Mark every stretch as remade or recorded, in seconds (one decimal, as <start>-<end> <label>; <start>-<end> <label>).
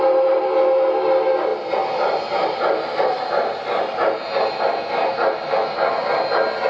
0.0-6.7 recorded